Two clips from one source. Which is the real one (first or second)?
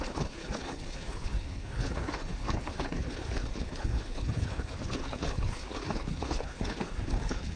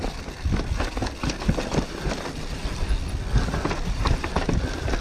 second